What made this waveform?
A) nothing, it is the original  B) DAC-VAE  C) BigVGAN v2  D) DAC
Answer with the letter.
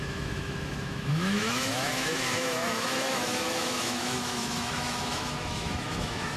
B